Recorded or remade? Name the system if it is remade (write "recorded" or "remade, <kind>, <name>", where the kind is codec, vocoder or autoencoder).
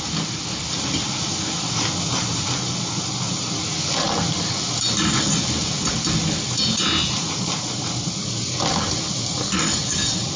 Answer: recorded